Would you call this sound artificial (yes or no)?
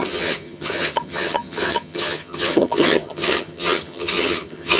yes